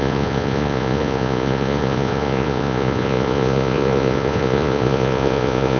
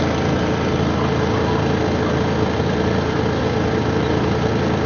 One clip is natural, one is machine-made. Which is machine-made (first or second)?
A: first